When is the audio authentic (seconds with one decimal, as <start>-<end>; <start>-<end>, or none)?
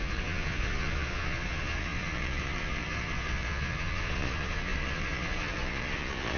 none